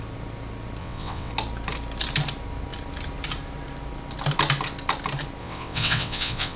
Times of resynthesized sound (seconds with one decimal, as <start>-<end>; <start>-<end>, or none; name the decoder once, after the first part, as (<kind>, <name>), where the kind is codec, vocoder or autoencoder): 0.8-1.3 (vocoder, WaveNeXt); 5.4-6.6